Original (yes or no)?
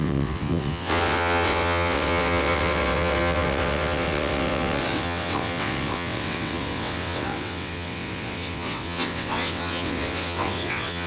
no